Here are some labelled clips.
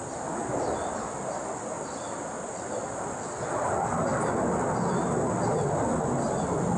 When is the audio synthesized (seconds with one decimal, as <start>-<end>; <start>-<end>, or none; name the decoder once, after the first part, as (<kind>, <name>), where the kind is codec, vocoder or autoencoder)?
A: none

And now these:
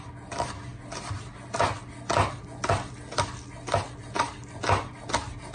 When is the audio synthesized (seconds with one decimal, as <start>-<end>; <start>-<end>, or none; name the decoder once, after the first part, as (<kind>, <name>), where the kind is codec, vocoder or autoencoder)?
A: none

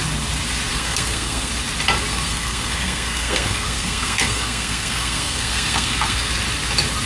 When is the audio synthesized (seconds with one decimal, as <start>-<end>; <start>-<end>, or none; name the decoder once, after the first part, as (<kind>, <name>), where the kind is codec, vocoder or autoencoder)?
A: 0.7-1.5 (codec, SNAC); 2.1-6.3

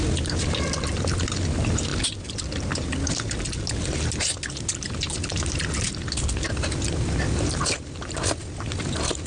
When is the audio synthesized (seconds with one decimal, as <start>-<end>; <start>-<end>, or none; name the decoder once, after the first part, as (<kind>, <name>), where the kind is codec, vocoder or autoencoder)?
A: none

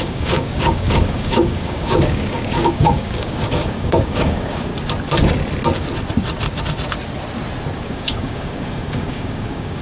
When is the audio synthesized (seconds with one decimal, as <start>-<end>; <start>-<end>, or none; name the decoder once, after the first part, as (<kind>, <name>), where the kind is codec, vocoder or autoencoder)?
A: 0.0-4.7 (codec, DAC); 7.8-9.8